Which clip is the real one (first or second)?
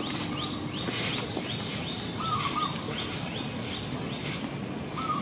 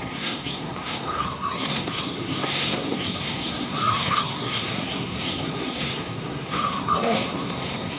first